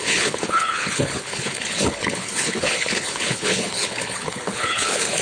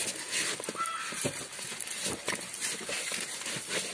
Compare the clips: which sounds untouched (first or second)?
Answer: second